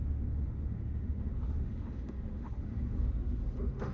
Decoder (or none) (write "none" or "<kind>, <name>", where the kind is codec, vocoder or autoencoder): autoencoder, DAC-VAE